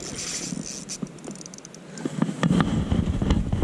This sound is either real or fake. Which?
real